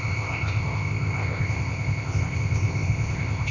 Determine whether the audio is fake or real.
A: fake